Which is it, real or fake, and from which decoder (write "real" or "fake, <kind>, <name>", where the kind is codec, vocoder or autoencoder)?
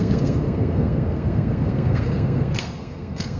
fake, codec, SNAC